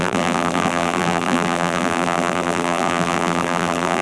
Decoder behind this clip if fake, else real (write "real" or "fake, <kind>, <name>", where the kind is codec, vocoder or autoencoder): fake, vocoder, BigVGAN v2